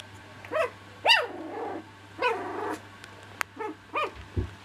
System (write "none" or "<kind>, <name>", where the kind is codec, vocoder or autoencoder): none